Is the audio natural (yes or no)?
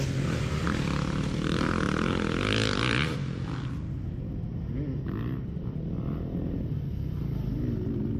yes